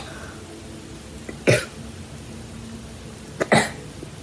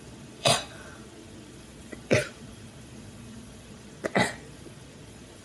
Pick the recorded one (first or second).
first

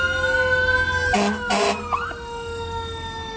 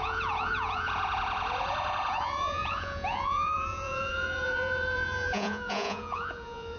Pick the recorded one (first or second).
first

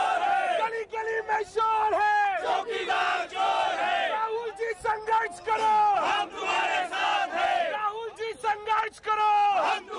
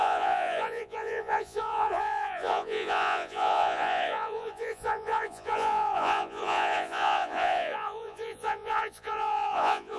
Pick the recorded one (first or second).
first